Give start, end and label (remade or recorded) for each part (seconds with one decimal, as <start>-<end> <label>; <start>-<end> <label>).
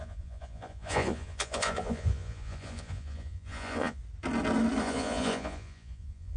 0.0-4.0 remade; 4.0-4.8 recorded; 4.8-6.4 remade